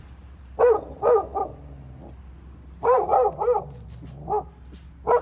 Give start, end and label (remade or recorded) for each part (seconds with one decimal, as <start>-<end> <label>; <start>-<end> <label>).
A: 0.0-5.2 recorded